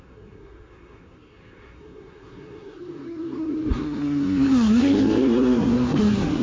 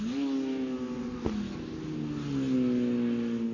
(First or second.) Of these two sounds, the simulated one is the first